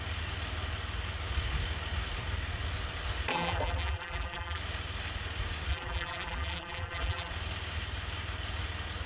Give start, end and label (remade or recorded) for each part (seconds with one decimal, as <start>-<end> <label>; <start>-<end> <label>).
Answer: 0.0-3.3 recorded; 3.3-4.6 remade; 4.6-5.7 recorded; 5.7-7.3 remade; 7.3-9.1 recorded